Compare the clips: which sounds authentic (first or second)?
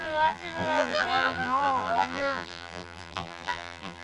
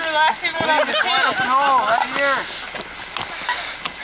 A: second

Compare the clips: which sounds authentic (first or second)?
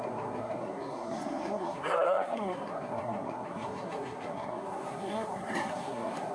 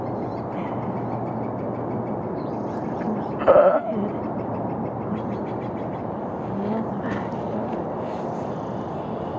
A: second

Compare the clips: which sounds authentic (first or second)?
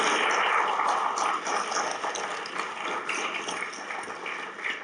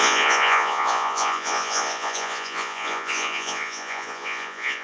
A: first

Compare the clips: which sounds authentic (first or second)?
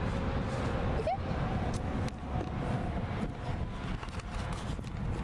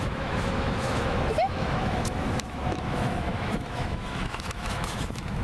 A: first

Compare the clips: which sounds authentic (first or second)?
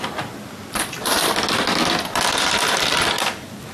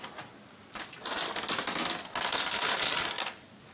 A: second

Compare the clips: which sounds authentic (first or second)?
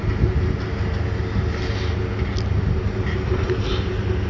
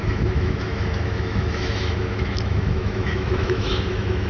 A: first